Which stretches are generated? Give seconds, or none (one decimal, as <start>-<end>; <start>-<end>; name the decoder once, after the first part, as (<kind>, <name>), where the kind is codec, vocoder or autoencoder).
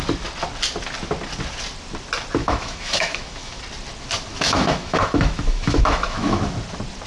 2.4-3.6 (autoencoder, DAC-VAE); 4.3-6.4